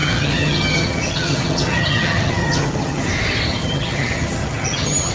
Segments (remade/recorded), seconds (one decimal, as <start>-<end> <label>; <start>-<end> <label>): 0.0-3.1 remade; 3.1-3.5 recorded; 3.5-5.1 remade